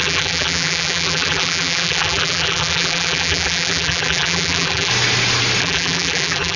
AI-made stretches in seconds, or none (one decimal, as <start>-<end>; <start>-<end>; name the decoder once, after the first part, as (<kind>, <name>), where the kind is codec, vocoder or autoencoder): 0.0-4.9 (vocoder, BigVGAN v2); 5.6-6.6